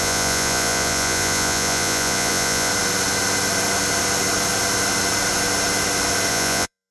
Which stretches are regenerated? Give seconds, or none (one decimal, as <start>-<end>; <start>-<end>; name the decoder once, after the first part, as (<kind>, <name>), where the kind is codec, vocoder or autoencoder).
0.0-2.7 (vocoder, Vocos); 6.3-6.9